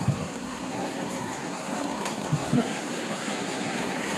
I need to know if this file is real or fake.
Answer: fake